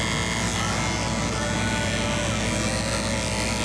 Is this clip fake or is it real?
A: real